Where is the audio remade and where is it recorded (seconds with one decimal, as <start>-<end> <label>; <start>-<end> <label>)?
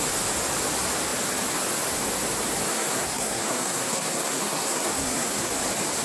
0.0-2.7 recorded; 2.7-5.5 remade; 5.5-6.0 recorded